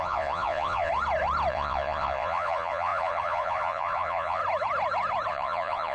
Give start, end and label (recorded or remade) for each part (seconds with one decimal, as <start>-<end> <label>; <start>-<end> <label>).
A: 0.0-0.9 remade; 0.9-1.5 recorded; 1.5-4.4 remade; 4.4-5.3 recorded; 5.3-5.9 remade